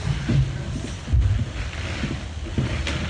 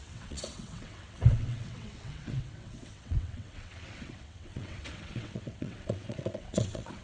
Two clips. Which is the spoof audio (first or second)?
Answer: second